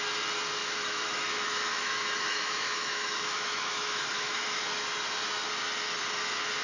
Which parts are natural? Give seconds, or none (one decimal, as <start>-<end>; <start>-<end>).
0.0-0.6; 4.6-6.6

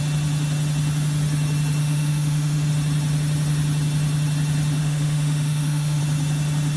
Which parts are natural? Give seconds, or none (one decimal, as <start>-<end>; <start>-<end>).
0.0-1.8; 2.7-4.8; 6.0-6.8

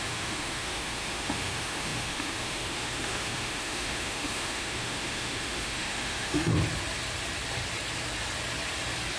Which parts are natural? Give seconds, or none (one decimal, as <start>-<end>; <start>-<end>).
6.5-9.2

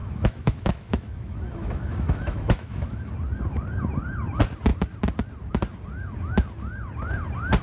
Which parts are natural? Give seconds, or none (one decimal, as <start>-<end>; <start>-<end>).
3.1-7.6

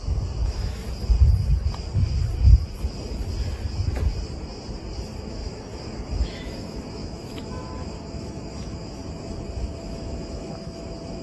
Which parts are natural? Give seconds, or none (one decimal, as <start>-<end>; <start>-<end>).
0.8-5.2; 9.0-9.6

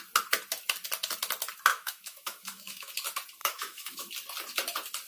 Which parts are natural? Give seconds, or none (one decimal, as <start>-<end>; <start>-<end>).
0.0-1.7; 2.9-3.4; 4.1-5.1